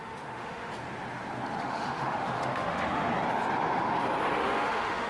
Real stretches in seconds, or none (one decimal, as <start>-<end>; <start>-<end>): 0.7-1.6; 3.1-4.3